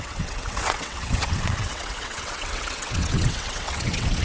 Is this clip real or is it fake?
fake